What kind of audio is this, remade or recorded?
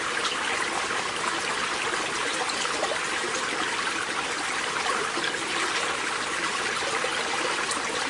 recorded